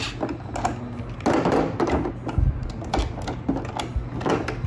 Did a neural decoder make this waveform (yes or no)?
no